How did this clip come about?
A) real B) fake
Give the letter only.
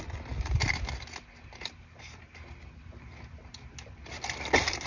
A